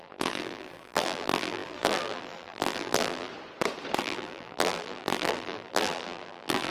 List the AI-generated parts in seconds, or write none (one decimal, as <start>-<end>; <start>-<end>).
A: 0.0-3.3; 4.0-6.7